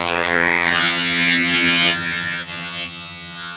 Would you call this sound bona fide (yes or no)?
no